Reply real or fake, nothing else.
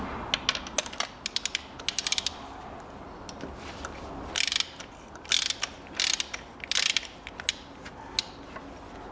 real